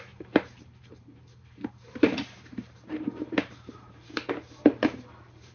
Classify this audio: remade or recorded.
remade